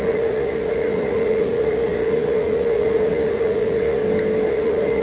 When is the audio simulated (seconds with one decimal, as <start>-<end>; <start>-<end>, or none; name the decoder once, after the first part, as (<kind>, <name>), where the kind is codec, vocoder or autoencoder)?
0.0-4.0 (vocoder, Vocos); 4.5-5.0